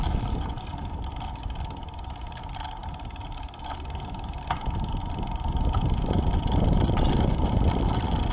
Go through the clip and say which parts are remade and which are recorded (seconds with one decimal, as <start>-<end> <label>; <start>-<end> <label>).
0.0-8.3 recorded

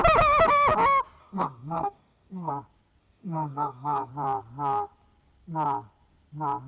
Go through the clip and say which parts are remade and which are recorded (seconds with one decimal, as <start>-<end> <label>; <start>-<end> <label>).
0.0-1.2 recorded; 1.2-2.5 remade; 2.5-3.0 recorded; 3.0-4.1 remade; 4.1-6.7 recorded

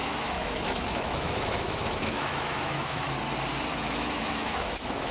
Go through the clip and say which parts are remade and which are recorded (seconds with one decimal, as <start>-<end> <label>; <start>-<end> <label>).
0.0-3.1 remade; 3.1-3.7 recorded; 3.7-5.1 remade

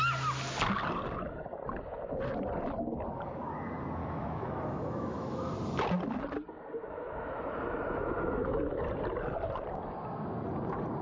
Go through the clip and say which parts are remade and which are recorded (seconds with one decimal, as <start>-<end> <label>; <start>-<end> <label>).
0.0-4.0 recorded; 4.0-5.5 remade; 5.5-6.8 recorded; 6.8-8.8 remade; 8.8-11.0 recorded

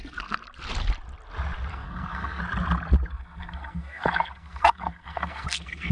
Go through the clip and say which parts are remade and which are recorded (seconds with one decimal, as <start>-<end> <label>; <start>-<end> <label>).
0.0-0.4 remade; 0.4-1.7 recorded; 1.7-2.4 remade; 2.4-3.1 recorded; 3.1-5.9 remade

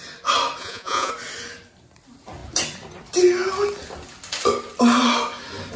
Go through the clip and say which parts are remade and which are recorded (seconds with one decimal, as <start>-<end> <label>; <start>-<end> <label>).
0.0-0.6 recorded; 0.6-1.1 remade; 1.1-5.8 recorded

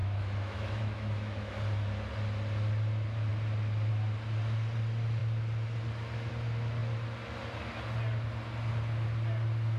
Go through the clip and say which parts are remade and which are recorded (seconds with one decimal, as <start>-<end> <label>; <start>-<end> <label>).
0.0-1.5 remade; 1.5-9.8 recorded

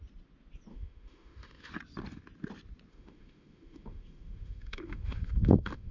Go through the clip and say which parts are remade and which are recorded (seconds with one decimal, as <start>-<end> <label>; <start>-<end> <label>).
0.0-0.7 recorded; 0.7-1.7 remade; 1.7-2.9 recorded; 2.9-5.9 remade